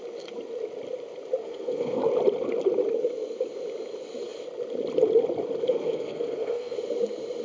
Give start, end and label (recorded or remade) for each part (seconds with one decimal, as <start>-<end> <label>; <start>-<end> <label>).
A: 0.0-1.4 recorded; 1.4-2.0 remade; 2.0-5.7 recorded; 5.7-6.8 remade; 6.8-7.4 recorded